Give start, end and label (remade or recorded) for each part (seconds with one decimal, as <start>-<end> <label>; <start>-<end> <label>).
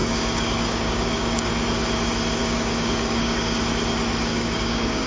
0.0-1.5 remade; 1.5-2.4 recorded; 2.4-3.6 remade; 3.6-4.3 recorded; 4.3-5.1 remade